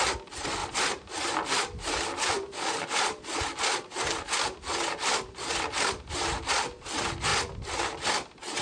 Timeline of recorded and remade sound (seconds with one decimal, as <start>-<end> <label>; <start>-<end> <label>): 0.0-0.6 recorded; 0.6-3.4 remade; 3.4-8.6 recorded